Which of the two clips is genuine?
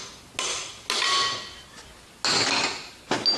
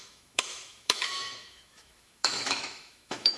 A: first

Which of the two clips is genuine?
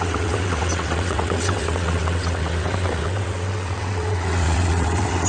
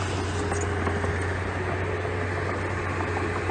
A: second